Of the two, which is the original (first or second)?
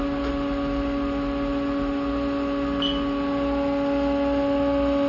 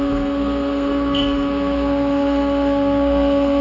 first